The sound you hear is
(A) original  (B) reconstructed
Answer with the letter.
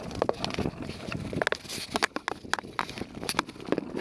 A